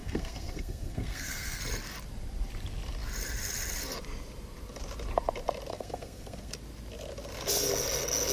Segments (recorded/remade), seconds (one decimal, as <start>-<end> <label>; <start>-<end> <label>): 0.0-1.6 remade; 1.6-5.7 recorded; 5.7-6.5 remade; 6.5-8.3 recorded